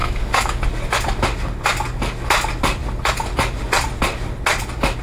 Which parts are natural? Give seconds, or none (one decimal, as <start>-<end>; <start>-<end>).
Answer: 0.6-5.0